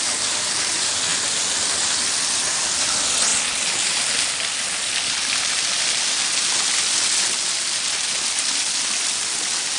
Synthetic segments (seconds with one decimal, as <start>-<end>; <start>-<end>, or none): none